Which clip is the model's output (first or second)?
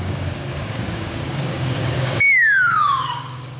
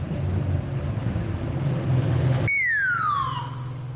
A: first